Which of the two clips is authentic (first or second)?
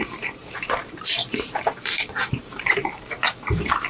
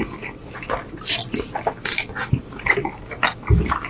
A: second